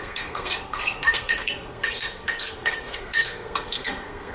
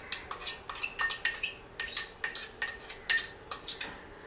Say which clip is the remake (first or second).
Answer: first